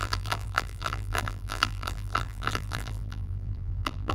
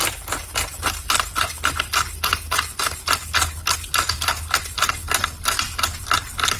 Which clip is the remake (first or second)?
first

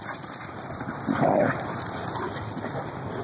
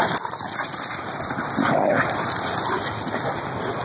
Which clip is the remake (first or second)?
first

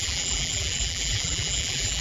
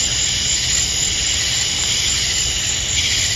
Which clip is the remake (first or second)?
first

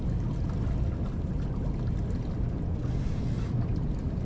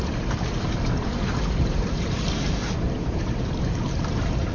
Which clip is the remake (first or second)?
second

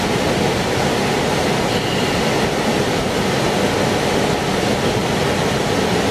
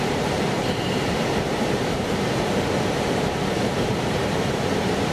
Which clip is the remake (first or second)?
second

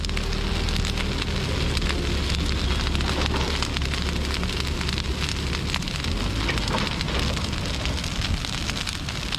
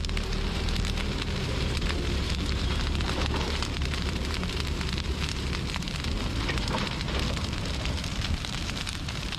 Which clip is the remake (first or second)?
second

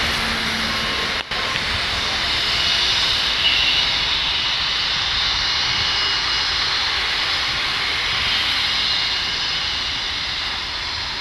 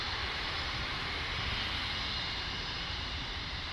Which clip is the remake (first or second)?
second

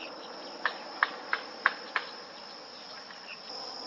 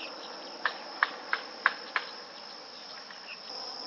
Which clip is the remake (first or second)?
second